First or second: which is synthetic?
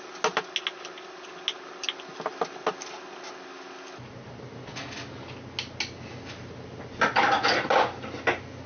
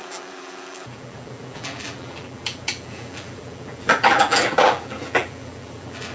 second